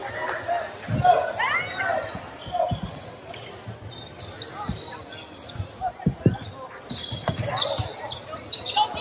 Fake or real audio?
real